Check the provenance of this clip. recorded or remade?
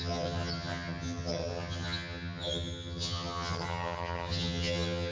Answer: remade